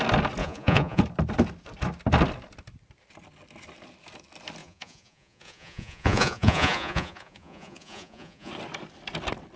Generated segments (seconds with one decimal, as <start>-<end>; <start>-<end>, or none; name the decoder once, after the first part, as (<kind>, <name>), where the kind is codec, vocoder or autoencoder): 0.4-1.0 (vocoder, Vocos); 4.6-8.5